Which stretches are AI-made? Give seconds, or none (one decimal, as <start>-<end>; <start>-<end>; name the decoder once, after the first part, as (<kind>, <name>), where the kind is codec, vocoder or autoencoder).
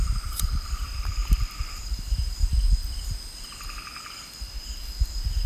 0.0-1.2 (vocoder, BigVGAN v2); 1.8-2.5